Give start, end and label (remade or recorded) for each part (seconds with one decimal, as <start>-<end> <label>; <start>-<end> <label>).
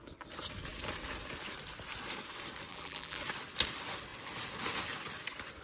0.0-2.7 recorded; 2.7-3.2 remade; 3.2-5.6 recorded